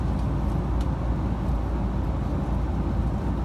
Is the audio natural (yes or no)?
yes